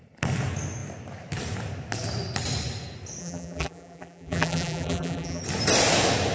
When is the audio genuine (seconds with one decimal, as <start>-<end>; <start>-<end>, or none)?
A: 0.0-3.2; 5.4-6.3